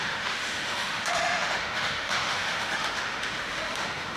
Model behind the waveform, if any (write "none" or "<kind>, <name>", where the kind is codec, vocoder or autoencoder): autoencoder, DAC-VAE